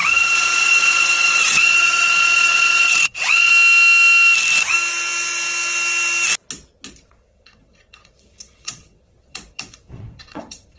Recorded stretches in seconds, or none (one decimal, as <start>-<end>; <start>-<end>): 3.5-7.0